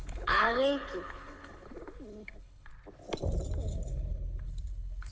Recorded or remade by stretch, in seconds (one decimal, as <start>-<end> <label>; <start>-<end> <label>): 0.0-2.7 remade; 2.7-3.6 recorded; 3.6-5.1 remade